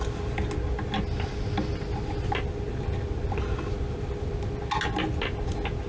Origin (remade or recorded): recorded